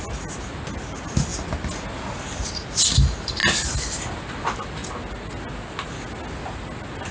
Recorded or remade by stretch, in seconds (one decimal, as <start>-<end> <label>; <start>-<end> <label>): 0.0-7.1 recorded